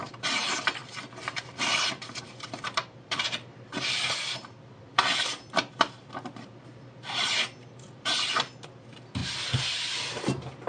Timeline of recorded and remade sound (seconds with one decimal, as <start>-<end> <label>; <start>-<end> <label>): 0.0-0.8 remade; 0.8-1.5 recorded; 1.5-9.2 remade; 9.2-10.7 recorded